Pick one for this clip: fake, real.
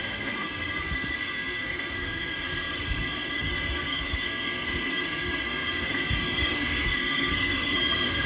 fake